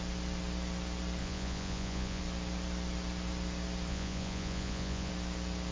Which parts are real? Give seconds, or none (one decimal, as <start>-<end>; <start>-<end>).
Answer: 0.0-1.2; 2.2-3.9; 5.1-5.7